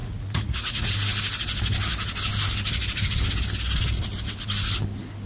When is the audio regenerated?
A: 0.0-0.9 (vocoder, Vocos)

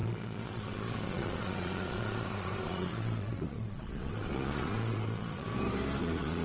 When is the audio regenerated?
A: 0.0-5.5 (vocoder, Vocos); 6.0-6.4

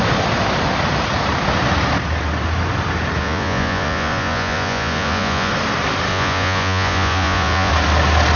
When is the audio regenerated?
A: 3.2-5.5 (vocoder, Vocos); 6.1-7.7